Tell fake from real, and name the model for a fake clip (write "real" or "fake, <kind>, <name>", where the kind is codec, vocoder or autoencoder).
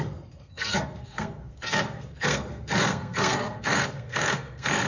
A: fake, codec, SNAC